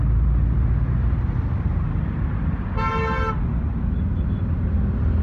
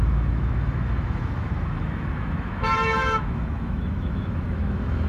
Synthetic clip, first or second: second